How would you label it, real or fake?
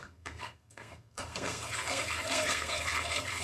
fake